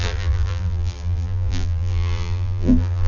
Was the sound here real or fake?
fake